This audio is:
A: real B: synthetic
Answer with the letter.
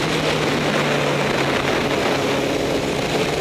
A